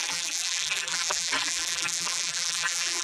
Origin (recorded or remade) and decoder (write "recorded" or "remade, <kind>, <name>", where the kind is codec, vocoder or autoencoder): remade, vocoder, BigVGAN v2